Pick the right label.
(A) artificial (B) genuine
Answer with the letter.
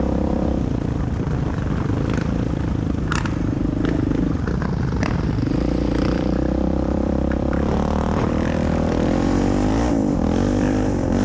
A